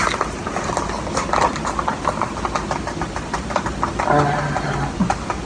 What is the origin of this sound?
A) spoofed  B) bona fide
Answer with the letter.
B